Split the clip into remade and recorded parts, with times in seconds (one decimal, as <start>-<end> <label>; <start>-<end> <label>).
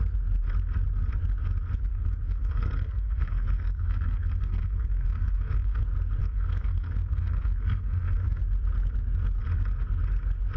0.0-1.9 recorded; 1.9-5.8 remade; 5.8-6.2 recorded; 6.2-8.4 remade; 8.4-10.6 recorded